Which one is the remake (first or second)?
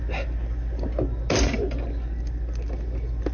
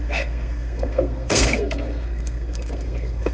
second